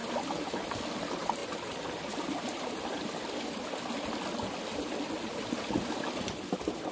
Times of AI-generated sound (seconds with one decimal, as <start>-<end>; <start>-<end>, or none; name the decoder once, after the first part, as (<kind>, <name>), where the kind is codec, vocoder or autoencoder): none